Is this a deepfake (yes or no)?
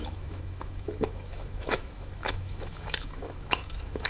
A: yes